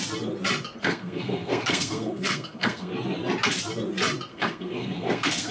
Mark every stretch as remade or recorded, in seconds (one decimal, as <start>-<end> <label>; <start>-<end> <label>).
0.0-0.8 recorded; 0.8-2.9 remade; 2.9-4.3 recorded; 4.3-5.5 remade